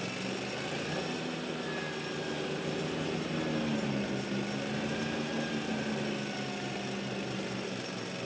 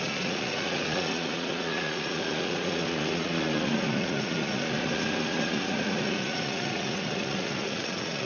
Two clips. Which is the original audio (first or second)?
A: first